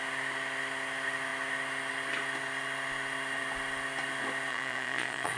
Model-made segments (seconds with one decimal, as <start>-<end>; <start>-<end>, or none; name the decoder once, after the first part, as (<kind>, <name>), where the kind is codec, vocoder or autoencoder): 4.5-5.4 (vocoder, Vocos)